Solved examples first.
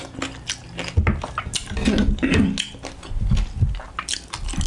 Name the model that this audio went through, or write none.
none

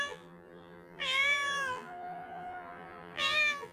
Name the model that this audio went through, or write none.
vocoder, BigVGAN v2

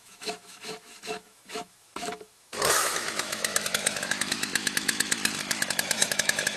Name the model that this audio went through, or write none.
autoencoder, DAC-VAE